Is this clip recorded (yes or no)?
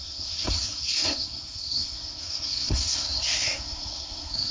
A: no